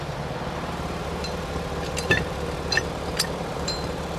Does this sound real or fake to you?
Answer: fake